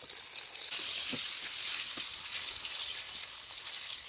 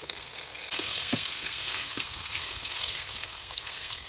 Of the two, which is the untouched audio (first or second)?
first